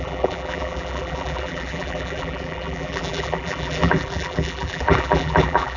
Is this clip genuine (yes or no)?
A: no